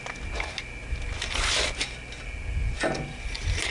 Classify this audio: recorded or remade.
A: recorded